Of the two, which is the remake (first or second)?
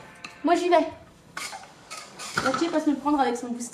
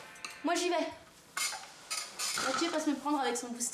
first